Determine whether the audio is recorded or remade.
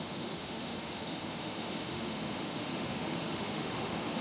remade